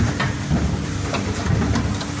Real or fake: real